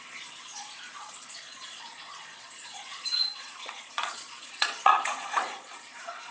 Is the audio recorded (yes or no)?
no